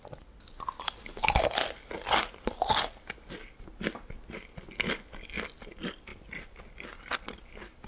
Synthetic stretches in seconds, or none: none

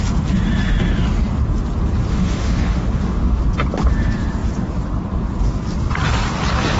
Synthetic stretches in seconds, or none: 2.1-3.4 (autoencoder, DAC-VAE)

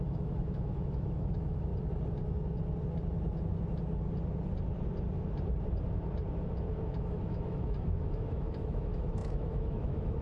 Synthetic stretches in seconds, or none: 0.0-1.7 (autoencoder, DAC-VAE); 6.9-10.2